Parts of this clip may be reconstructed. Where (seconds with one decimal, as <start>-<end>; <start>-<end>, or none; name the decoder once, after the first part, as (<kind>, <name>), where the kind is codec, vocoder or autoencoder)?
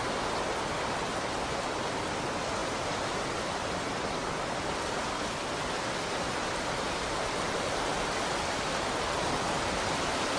none